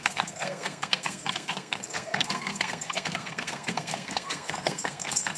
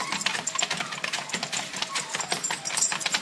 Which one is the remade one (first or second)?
first